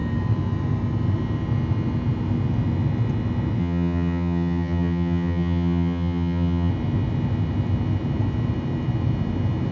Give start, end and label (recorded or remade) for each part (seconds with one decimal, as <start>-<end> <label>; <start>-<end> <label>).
0.0-3.6 recorded; 3.6-6.7 remade; 6.7-9.7 recorded